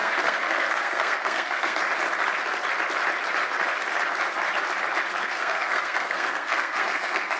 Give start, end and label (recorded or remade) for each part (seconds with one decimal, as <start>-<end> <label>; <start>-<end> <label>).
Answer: 0.0-1.8 remade; 1.8-5.2 recorded; 5.2-7.4 remade